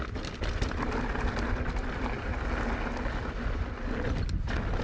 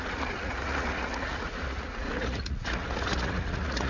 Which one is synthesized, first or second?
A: second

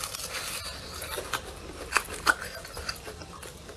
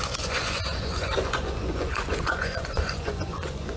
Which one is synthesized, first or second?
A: second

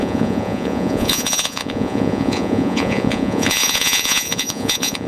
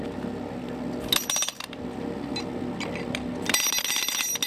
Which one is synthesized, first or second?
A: first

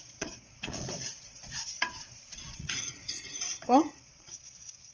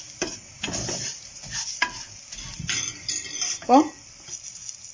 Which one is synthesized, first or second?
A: first